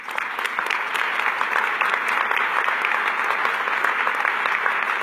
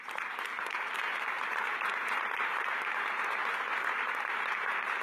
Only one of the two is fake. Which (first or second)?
second